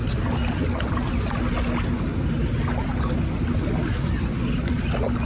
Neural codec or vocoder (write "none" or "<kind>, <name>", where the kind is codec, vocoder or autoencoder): none